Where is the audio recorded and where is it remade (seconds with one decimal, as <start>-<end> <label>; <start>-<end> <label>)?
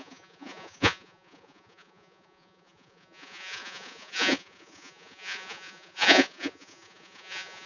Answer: 0.0-7.7 remade